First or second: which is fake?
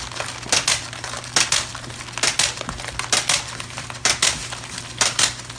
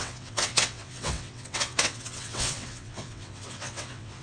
second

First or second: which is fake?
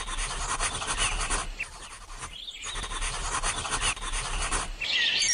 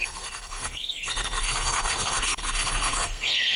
second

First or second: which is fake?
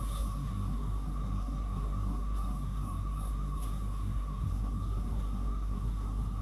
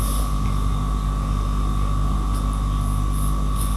first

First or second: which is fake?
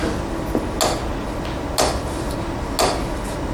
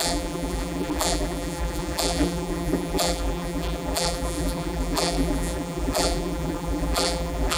second